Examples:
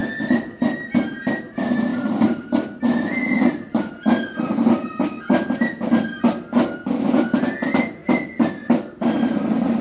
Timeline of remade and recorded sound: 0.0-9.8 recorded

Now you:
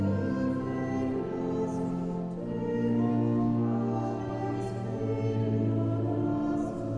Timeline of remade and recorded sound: 0.0-3.1 recorded; 3.1-4.3 remade; 4.3-7.0 recorded

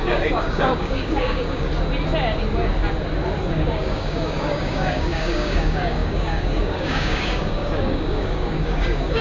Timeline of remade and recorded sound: 0.0-1.7 remade; 1.7-3.5 recorded; 3.5-9.2 remade

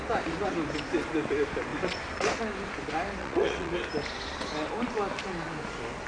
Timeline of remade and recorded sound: 0.0-3.2 recorded; 3.2-3.7 remade; 3.7-6.1 recorded

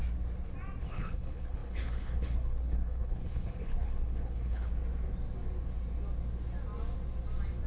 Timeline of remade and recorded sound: 0.0-0.8 recorded; 0.8-4.7 remade; 4.7-7.7 recorded